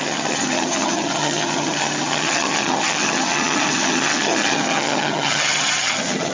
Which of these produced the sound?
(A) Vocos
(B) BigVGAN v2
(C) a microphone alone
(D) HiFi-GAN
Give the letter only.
D